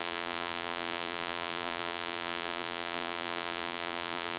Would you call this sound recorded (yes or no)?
no